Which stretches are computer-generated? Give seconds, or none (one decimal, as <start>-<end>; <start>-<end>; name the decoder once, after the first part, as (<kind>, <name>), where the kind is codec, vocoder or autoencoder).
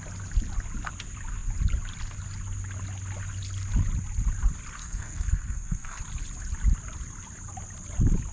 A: 4.8-6.0 (codec, SNAC)